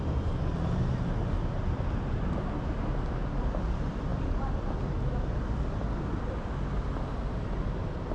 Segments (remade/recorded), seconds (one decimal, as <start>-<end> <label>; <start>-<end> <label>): 0.0-8.1 recorded